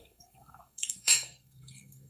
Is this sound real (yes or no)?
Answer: no